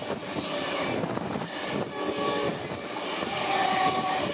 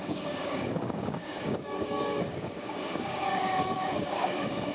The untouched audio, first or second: first